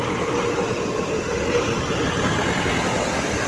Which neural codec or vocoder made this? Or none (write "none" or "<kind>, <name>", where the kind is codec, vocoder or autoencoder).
none